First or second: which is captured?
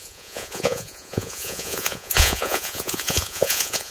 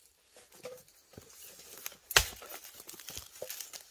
second